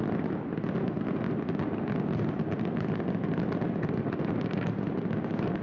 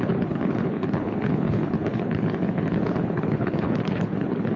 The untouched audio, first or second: first